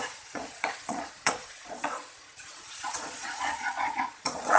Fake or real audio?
fake